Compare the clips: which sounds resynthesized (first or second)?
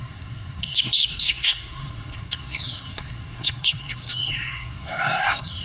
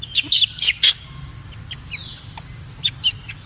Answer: first